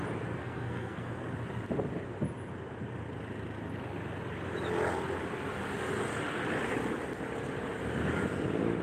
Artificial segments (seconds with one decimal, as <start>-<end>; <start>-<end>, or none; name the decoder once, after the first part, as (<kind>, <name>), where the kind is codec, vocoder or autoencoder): 0.4-1.1 (codec, SNAC)